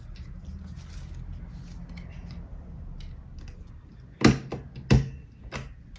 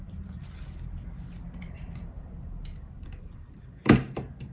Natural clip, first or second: first